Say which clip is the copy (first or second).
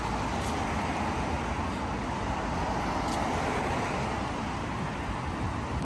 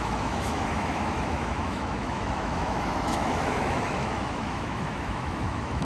second